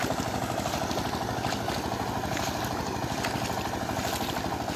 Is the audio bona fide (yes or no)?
yes